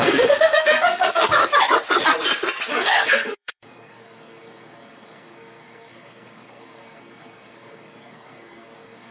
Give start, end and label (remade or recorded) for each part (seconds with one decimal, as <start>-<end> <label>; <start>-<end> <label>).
0.0-1.4 remade; 1.4-2.7 recorded; 2.7-9.1 remade